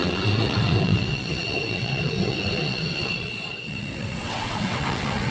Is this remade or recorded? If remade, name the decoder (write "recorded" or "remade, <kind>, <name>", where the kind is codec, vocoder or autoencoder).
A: remade, vocoder, WaveNeXt